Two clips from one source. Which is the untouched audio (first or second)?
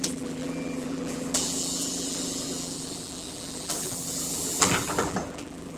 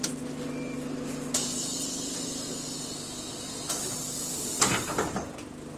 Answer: second